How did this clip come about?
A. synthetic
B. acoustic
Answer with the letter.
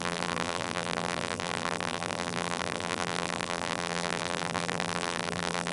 A